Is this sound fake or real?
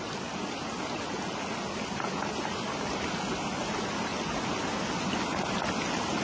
real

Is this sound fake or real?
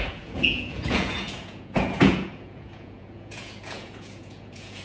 fake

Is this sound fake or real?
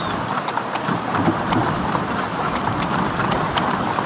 real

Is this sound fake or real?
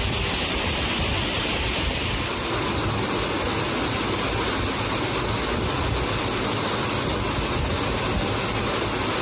real